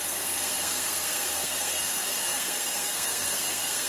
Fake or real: fake